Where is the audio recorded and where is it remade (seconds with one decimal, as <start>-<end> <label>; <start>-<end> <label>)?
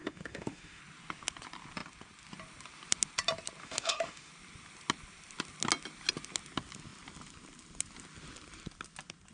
0.0-0.8 remade; 0.8-3.6 recorded; 3.6-4.3 remade; 4.3-9.3 recorded